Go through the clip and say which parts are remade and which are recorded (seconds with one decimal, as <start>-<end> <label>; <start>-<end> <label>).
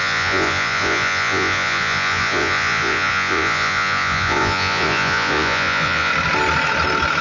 0.0-6.1 remade; 6.1-7.2 recorded